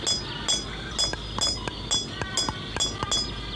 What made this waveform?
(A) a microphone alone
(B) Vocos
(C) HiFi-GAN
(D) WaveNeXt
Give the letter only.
A